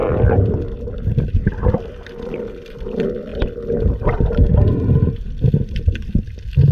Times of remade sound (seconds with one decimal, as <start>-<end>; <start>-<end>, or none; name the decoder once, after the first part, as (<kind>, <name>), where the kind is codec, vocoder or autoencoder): 1.6-3.3 (vocoder, BigVGAN v2); 5.4-6.7